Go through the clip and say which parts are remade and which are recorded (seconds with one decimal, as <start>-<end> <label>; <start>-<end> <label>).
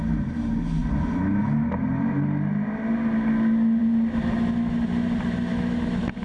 0.0-6.2 recorded